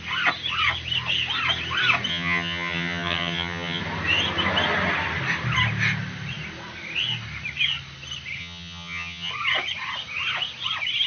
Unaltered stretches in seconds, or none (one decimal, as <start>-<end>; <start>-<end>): 0.0-2.1; 3.8-8.4; 9.3-11.1